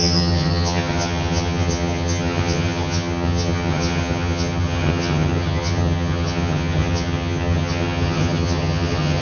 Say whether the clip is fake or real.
fake